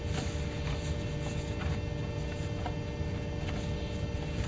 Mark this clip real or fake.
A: real